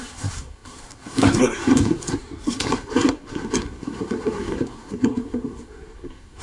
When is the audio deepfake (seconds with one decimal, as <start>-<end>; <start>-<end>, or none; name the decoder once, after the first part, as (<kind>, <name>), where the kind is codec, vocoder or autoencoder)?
0.0-6.4 (codec, SNAC)